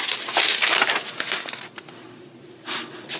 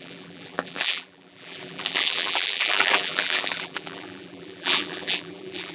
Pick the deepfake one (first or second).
second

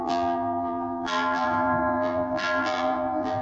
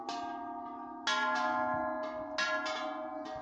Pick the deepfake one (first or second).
first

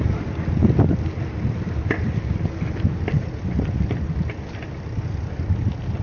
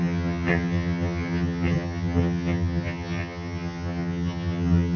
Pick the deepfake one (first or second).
second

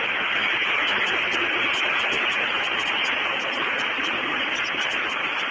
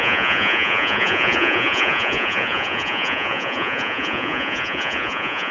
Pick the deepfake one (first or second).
second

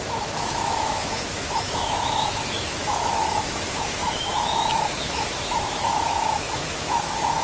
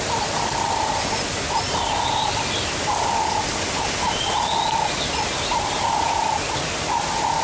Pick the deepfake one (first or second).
first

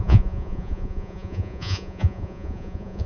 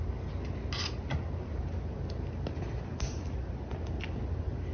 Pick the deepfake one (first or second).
first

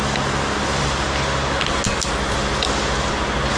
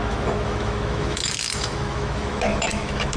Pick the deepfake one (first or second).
second